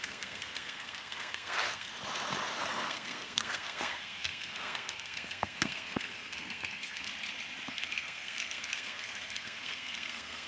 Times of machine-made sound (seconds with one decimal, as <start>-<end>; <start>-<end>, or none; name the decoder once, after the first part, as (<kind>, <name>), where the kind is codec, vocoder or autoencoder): 0.0-1.9 (codec, SNAC); 2.6-7.1; 7.7-10.5